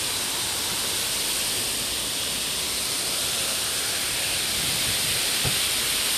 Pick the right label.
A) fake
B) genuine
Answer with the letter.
B